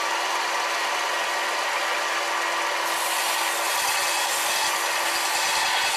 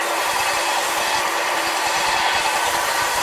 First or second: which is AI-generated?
second